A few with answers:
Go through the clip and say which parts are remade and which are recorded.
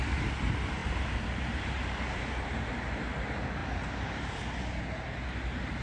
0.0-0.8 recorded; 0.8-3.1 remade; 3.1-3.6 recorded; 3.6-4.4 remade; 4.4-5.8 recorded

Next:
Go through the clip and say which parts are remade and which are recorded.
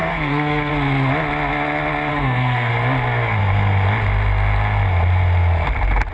0.0-0.7 remade; 0.7-2.1 recorded; 2.1-2.7 remade; 2.7-6.1 recorded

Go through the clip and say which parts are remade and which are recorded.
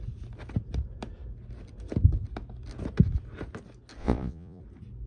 0.0-4.0 recorded; 4.0-4.6 remade; 4.6-5.1 recorded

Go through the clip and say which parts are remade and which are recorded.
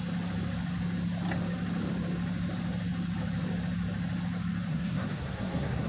0.0-4.7 recorded; 4.7-5.9 remade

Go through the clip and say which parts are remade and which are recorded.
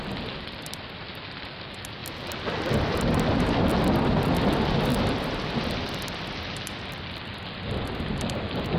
0.0-8.8 recorded